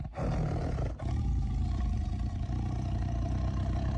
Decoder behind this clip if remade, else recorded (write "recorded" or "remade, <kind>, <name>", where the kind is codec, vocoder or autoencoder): recorded